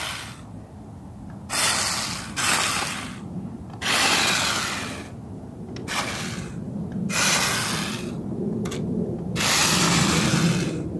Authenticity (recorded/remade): recorded